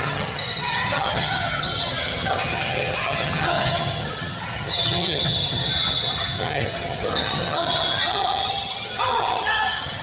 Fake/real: fake